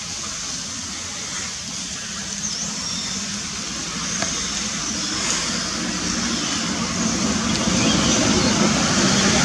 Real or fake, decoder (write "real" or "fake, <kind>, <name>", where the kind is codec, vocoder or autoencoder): real